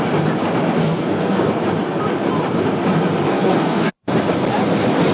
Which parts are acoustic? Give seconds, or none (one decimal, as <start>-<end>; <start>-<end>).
0.0-0.8; 1.5-3.3; 3.9-5.1